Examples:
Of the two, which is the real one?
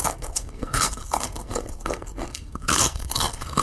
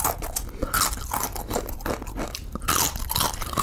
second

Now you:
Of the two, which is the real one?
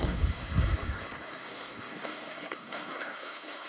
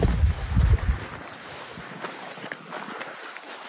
second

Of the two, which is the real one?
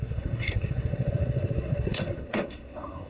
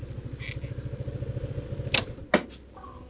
second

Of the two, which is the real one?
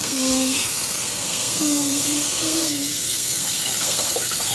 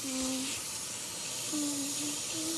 second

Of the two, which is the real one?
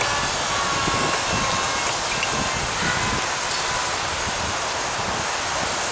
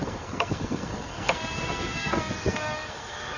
first